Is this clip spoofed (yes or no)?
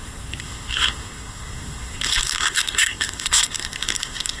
yes